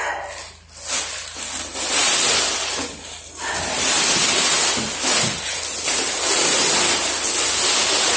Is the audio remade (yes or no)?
no